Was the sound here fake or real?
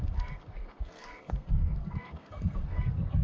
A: fake